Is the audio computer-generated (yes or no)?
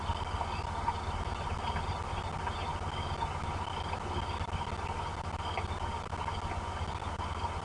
no